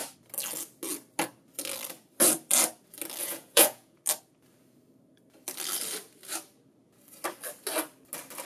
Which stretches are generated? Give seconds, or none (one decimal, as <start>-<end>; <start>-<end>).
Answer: 3.2-4.0